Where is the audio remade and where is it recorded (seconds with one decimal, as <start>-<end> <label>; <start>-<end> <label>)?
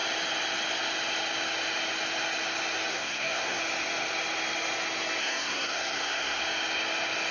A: 0.0-2.9 recorded; 2.9-3.6 remade; 3.6-5.2 recorded; 5.2-6.4 remade; 6.4-7.3 recorded